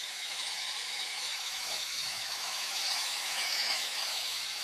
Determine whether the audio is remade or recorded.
remade